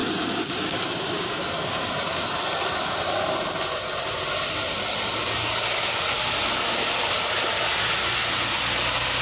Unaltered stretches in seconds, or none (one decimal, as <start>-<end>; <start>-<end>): 0.0-9.2